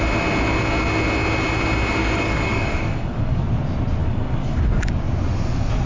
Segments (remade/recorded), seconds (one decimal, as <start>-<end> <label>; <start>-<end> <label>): 0.0-2.0 recorded; 2.0-3.4 remade; 3.4-4.0 recorded; 4.0-4.8 remade; 4.8-5.9 recorded